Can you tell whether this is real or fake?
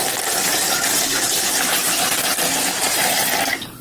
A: fake